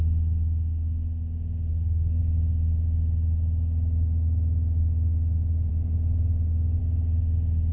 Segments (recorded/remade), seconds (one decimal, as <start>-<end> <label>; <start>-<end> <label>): 0.0-1.7 recorded; 1.7-2.2 remade; 2.2-7.7 recorded